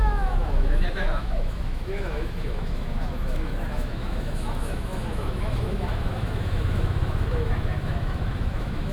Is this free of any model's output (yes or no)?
no